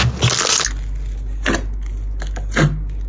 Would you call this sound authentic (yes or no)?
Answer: yes